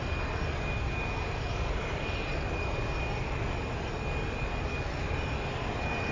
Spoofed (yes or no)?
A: no